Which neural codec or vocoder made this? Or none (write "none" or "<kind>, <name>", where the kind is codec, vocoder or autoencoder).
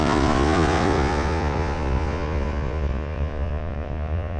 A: vocoder, Vocos